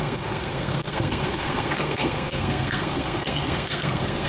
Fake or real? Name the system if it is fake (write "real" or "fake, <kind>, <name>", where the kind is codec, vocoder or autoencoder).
fake, codec, SNAC